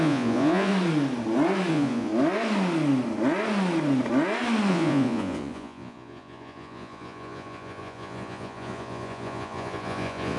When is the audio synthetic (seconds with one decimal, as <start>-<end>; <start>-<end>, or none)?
0.0-0.7; 1.7-2.1; 4.7-10.4

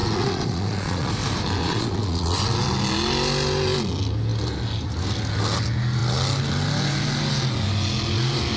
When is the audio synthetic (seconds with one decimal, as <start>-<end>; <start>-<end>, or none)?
0.0-1.1; 1.6-2.4

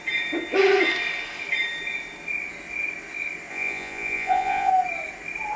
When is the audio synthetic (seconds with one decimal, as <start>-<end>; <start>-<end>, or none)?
3.5-4.7

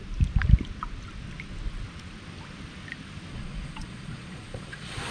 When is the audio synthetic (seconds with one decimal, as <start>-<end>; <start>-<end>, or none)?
3.3-5.1